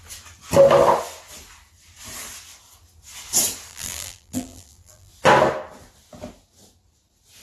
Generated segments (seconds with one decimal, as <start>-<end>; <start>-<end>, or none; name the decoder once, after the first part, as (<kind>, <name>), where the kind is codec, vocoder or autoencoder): 3.7-5.1 (vocoder, BigVGAN v2)